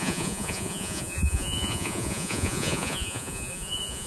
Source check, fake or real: fake